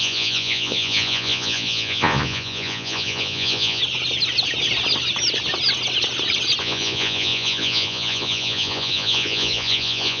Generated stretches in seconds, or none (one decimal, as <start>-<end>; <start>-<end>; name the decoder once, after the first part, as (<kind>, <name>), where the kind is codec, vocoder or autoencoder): 0.0-3.8 (vocoder, Vocos); 6.6-10.2